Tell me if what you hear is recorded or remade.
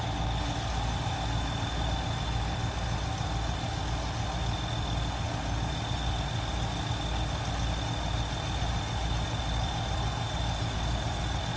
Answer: recorded